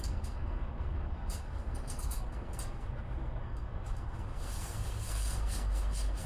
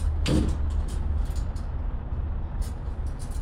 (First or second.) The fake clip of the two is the first